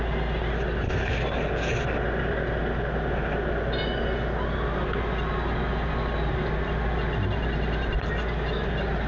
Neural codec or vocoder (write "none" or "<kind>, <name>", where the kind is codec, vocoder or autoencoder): none